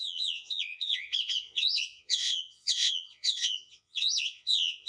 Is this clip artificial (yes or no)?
yes